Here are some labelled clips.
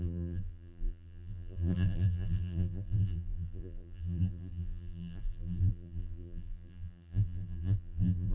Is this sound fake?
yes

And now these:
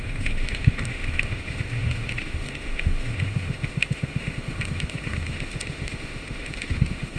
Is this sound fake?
yes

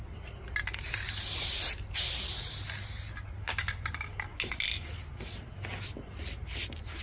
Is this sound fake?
no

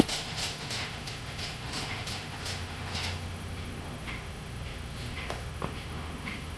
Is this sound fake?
yes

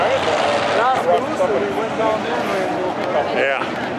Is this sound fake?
no